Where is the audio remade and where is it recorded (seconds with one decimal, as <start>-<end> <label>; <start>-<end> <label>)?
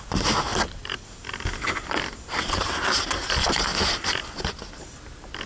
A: 0.0-5.5 recorded